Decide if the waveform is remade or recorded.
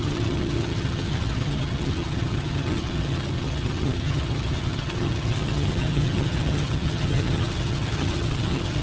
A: remade